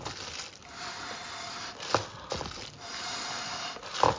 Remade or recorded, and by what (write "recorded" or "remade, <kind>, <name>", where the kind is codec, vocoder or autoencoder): recorded